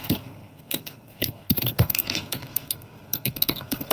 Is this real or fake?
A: fake